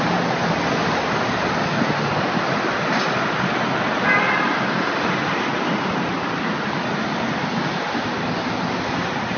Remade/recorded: recorded